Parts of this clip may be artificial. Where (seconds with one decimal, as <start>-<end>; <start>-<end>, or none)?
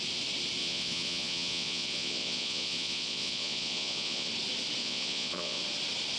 0.6-4.3; 4.8-5.6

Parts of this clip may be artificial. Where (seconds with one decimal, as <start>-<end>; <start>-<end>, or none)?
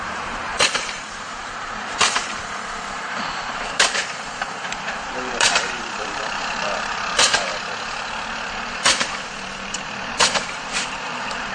0.0-7.5; 8.7-11.5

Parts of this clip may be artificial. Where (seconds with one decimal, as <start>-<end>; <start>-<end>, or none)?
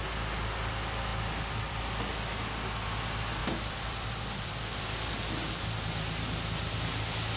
3.4-5.1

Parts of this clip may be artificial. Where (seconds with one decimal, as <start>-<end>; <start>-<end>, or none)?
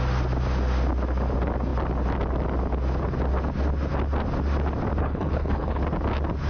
5.0-5.8